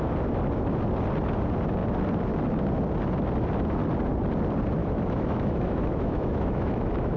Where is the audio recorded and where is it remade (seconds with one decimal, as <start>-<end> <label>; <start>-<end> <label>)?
0.0-4.8 recorded; 4.8-7.2 remade